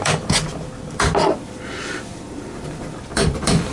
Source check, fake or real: fake